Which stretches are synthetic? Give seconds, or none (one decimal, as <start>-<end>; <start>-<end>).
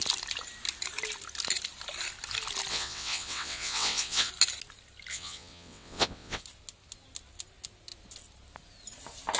2.7-4.3; 5.1-6.4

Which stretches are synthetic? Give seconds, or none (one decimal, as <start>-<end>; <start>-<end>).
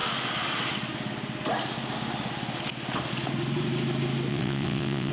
4.3-5.1